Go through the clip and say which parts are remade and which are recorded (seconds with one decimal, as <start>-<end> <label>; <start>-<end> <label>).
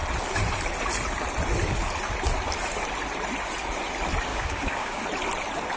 0.0-4.3 recorded; 4.3-5.0 remade; 5.0-5.8 recorded